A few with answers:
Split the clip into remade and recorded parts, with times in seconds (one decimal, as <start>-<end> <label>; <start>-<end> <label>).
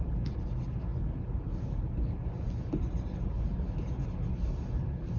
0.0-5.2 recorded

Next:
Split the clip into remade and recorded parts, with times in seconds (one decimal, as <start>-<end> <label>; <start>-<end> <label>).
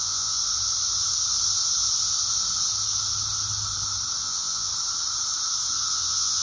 0.0-0.4 remade; 0.4-4.2 recorded; 4.2-4.7 remade; 4.7-5.9 recorded; 5.9-6.4 remade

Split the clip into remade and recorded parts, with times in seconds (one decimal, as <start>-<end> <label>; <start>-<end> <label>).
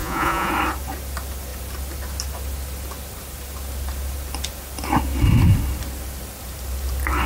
0.0-0.5 remade; 0.5-7.3 recorded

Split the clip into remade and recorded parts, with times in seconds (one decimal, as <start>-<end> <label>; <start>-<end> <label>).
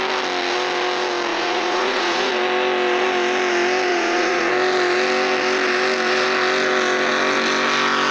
0.0-1.3 recorded; 1.3-2.3 remade; 2.3-3.9 recorded; 3.9-4.5 remade; 4.5-8.1 recorded